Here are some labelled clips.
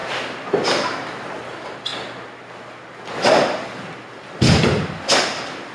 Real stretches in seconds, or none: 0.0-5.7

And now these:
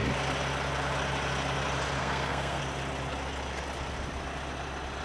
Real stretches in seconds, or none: 0.0-2.0; 2.6-5.0

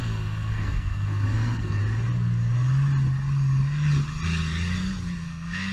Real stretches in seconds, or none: 1.8-5.2

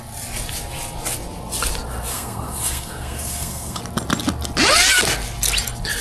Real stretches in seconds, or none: 0.0-2.1; 3.8-6.0